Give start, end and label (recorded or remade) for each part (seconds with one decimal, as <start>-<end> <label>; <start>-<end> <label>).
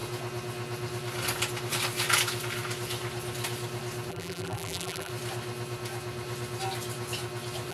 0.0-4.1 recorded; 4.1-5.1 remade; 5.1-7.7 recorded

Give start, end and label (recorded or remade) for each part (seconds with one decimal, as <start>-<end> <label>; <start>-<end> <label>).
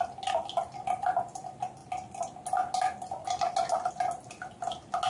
0.0-5.1 recorded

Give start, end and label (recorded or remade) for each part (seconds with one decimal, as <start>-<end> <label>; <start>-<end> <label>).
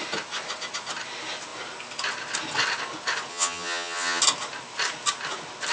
0.0-3.3 recorded; 3.3-4.2 remade; 4.2-5.7 recorded